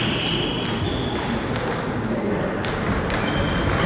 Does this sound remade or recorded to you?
recorded